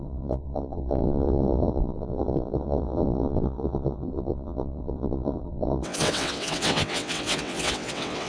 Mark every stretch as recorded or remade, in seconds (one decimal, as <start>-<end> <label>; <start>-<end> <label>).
0.0-8.3 remade